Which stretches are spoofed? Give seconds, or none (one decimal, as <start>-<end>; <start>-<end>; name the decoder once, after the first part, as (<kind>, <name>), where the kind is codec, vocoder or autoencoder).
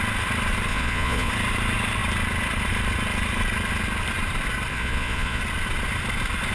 0.7-1.3 (vocoder, Vocos); 4.7-5.4